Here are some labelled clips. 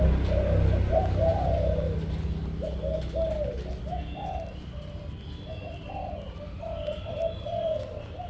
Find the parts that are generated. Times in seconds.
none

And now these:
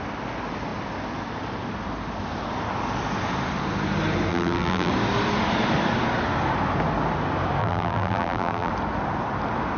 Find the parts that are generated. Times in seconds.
4.3-4.9 (vocoder, BigVGAN v2); 7.6-8.7

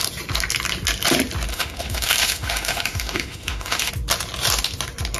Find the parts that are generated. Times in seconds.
1.5-3.9 (autoencoder, DAC-VAE)

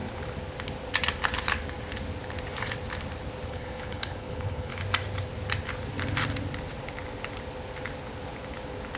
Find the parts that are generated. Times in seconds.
3.5-4.7 (codec, HILCodec)

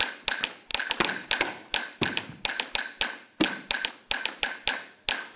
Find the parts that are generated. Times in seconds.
none

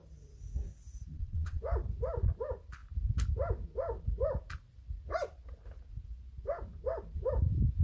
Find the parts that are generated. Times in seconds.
1.1-1.6 (vocoder, Vocos)

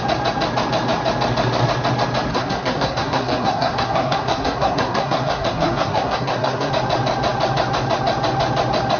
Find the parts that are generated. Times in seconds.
2.3-6.7 (codec, SNAC)

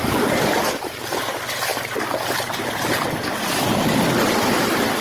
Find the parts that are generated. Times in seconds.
0.0-5.0 (vocoder, BigVGAN v2)